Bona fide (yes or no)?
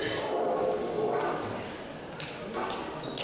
yes